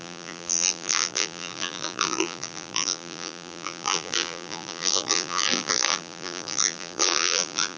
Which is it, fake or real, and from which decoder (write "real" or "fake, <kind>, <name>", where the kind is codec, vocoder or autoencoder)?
fake, vocoder, BigVGAN v2